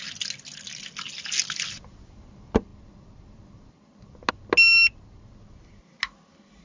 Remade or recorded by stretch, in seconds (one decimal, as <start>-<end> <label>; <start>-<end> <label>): 0.0-6.6 recorded